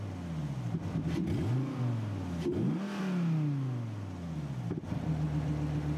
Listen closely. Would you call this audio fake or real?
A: real